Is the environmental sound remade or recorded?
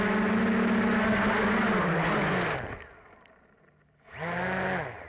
recorded